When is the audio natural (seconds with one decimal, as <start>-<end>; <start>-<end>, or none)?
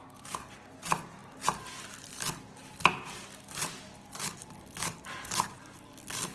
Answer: 0.0-6.3